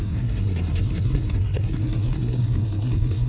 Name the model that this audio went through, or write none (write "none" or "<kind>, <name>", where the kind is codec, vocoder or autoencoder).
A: codec, SNAC